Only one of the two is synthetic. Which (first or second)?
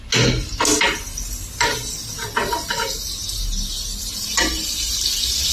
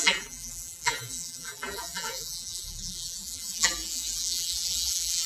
second